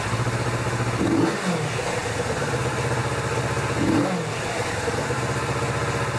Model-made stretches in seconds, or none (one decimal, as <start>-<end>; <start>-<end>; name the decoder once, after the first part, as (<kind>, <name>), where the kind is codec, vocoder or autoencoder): none